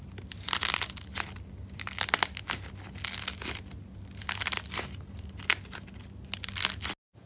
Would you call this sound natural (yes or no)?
yes